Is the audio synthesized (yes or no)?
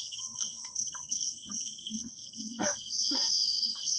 yes